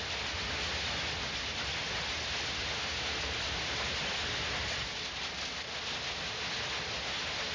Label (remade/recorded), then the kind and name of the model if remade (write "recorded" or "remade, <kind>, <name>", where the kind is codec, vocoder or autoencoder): recorded